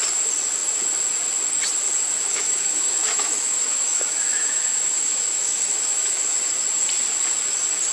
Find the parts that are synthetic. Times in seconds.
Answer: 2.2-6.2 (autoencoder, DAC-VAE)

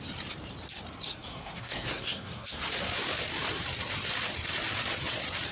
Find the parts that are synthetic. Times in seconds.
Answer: 1.1-2.6 (codec, SNAC)

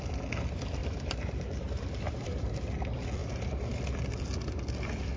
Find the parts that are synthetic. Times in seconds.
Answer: 0.8-2.7 (vocoder, BigVGAN v2); 3.2-3.8

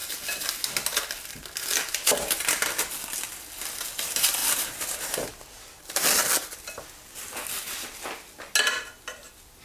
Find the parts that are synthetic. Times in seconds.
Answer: 4.4-5.3 (vocoder, BigVGAN v2)